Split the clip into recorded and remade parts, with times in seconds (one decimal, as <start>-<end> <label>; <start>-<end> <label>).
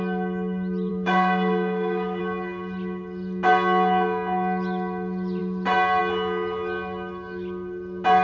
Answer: 0.0-0.9 recorded; 0.9-2.2 remade; 2.2-8.2 recorded